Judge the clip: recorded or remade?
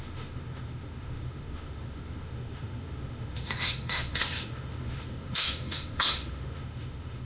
remade